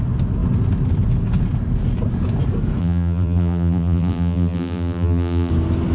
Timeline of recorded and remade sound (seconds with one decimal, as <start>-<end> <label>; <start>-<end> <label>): 0.0-2.8 recorded; 2.8-5.5 remade; 5.5-5.9 recorded